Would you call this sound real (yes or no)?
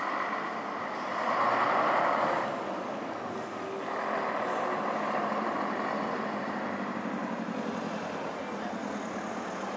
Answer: yes